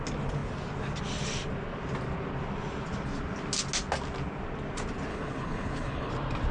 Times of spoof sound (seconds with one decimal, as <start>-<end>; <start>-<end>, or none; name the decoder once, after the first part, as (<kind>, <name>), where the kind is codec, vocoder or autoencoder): 5.1-6.1 (codec, HILCodec)